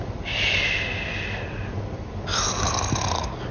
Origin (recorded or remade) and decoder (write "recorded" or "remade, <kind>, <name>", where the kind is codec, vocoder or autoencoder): recorded